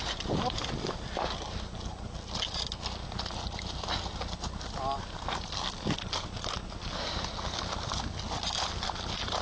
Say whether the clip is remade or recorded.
recorded